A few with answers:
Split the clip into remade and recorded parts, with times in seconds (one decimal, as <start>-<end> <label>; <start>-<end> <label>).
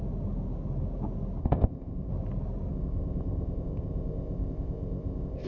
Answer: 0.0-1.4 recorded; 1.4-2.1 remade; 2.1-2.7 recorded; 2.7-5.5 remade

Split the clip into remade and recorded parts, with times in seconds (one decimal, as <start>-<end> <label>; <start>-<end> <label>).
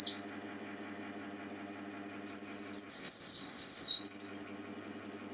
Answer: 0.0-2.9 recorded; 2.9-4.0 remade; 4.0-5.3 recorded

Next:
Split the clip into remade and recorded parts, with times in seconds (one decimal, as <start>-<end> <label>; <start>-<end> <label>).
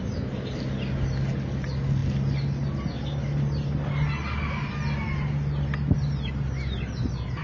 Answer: 0.0-7.4 recorded